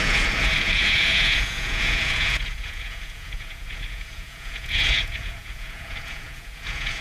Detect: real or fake fake